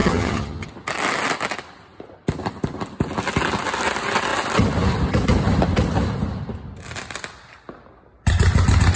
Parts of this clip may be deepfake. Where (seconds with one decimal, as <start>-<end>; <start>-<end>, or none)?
0.0-0.7